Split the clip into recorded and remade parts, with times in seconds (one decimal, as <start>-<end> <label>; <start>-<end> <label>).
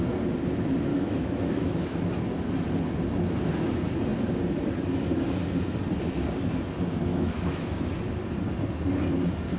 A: 0.0-0.9 recorded; 0.9-2.0 remade; 2.0-7.1 recorded; 7.1-7.9 remade; 7.9-9.6 recorded